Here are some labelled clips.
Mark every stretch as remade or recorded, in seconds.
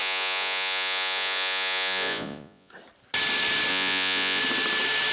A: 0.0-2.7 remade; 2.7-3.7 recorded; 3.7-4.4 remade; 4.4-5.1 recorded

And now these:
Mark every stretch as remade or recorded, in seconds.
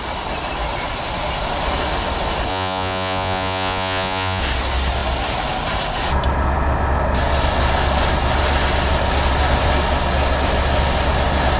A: 0.0-2.5 recorded; 2.5-4.4 remade; 4.4-11.6 recorded